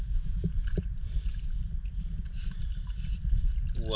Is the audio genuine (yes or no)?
yes